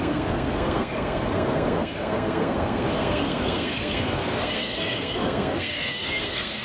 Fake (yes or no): yes